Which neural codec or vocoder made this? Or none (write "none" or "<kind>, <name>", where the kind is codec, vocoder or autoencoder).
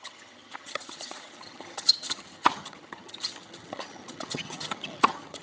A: vocoder, HiFi-GAN